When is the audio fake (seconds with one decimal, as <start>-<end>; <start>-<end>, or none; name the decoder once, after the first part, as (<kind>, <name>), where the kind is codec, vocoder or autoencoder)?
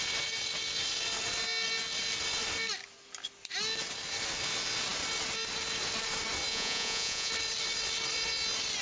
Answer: 6.5-7.3 (vocoder, Vocos)